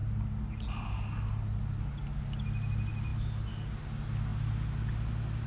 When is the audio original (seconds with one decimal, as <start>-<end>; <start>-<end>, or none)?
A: 0.0-5.5